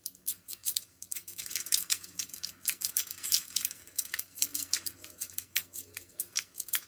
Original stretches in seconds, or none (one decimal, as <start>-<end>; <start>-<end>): none